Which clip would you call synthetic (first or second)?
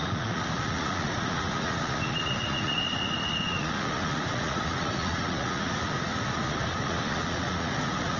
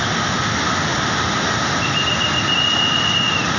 first